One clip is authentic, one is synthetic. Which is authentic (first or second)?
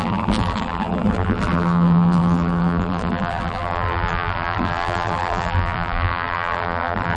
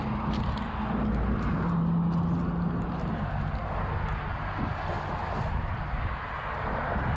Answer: second